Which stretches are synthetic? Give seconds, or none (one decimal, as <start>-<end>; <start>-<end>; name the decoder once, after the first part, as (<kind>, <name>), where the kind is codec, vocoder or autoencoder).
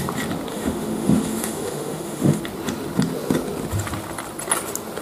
0.5-2.4 (autoencoder, DAC-VAE)